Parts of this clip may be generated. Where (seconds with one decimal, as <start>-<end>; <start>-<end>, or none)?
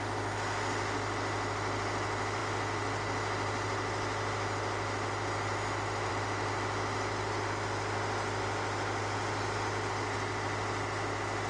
none